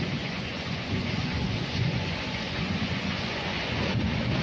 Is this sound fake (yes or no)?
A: yes